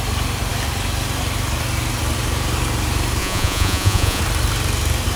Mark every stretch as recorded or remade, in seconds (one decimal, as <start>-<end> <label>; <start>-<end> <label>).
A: 0.0-3.2 recorded; 3.2-4.2 remade; 4.2-5.2 recorded